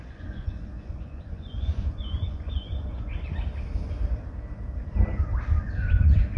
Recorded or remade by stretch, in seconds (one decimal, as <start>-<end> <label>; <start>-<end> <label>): 0.0-3.1 remade; 3.1-5.6 recorded; 5.6-6.4 remade